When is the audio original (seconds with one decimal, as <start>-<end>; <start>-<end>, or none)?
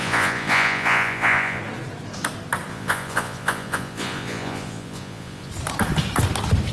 1.6-2.7; 5.5-6.7